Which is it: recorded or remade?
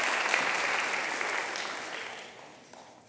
recorded